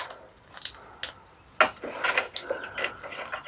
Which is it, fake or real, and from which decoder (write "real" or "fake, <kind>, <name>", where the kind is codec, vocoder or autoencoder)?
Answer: real